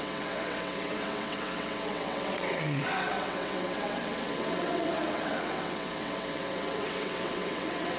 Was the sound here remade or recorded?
remade